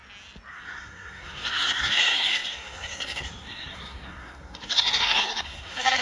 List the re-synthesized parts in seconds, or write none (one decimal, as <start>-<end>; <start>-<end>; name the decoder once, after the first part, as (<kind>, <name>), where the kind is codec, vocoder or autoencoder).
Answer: 0.5-6.0 (codec, SNAC)

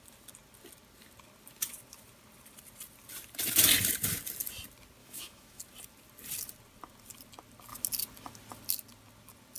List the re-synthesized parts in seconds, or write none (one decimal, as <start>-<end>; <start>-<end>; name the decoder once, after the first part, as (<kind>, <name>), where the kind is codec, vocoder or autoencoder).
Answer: 5.0-5.6 (autoencoder, DAC-VAE)

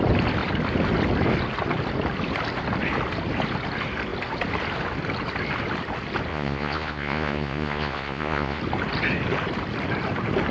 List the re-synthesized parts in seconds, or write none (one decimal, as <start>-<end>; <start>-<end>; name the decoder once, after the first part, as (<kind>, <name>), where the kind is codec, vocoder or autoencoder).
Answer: 6.3-8.6 (vocoder, Vocos)